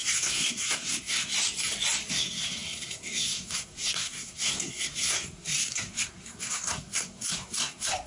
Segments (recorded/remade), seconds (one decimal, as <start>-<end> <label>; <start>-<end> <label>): 0.0-1.3 remade; 1.3-2.1 recorded; 2.1-8.1 remade